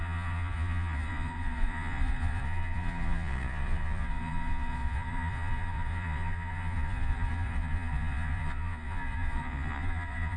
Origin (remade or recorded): remade